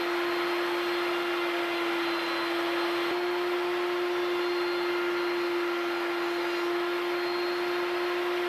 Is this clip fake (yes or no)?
no